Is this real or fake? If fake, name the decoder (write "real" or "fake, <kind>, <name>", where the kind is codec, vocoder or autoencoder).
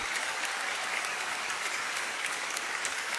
fake, codec, DAC